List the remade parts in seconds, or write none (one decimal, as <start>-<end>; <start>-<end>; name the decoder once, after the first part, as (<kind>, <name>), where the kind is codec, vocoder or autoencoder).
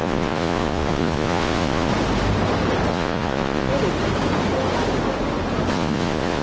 0.0-1.9 (vocoder, Vocos); 2.9-3.7; 5.7-6.4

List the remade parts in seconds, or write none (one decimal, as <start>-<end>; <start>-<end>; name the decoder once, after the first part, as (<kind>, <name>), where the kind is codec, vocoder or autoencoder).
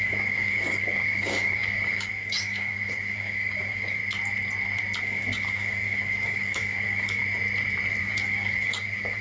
0.0-4.0 (codec, DAC); 5.0-7.2; 8.0-9.2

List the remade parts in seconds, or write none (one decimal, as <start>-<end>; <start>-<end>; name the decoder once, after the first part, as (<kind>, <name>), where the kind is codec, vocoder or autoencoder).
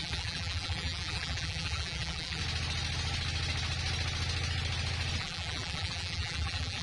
0.0-2.4 (vocoder, BigVGAN v2); 5.2-6.8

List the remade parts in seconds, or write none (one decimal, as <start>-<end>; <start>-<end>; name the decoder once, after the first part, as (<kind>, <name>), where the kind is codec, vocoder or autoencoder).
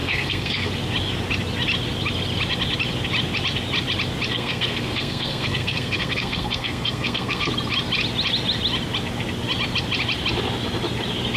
0.0-0.7 (codec, SNAC); 4.3-7.5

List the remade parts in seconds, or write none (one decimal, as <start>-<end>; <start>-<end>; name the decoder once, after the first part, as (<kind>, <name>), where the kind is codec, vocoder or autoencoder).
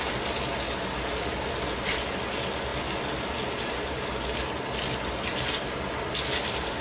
none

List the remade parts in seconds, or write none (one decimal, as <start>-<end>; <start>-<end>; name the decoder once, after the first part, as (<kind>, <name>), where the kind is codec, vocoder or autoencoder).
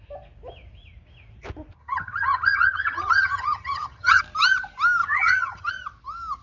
1.8-4.2 (vocoder, HiFi-GAN); 5.0-5.7